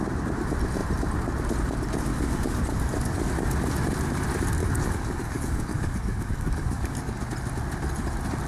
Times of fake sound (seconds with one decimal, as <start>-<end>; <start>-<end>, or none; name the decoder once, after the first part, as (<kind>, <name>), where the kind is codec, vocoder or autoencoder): 2.1-3.3 (codec, DAC); 4.6-7.1